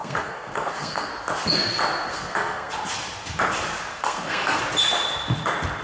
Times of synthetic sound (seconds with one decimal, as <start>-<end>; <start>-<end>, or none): 0.0-1.1; 2.1-2.7; 3.9-4.6